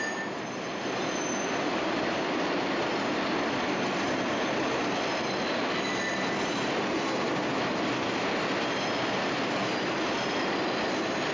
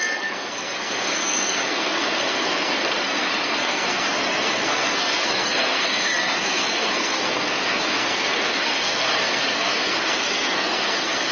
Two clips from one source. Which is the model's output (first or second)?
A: second